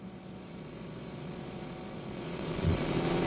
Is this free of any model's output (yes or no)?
no